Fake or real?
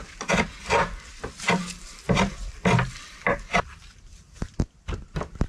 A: fake